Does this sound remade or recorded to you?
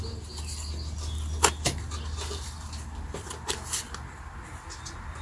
recorded